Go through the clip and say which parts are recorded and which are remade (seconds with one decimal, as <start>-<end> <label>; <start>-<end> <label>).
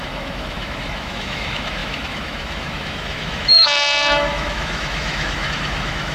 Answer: 0.0-6.1 remade